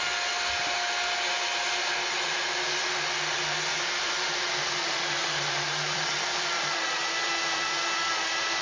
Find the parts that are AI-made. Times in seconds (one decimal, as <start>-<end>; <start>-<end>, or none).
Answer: 3.7-7.1